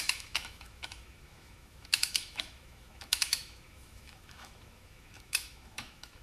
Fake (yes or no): yes